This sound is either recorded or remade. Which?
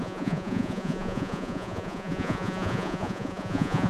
remade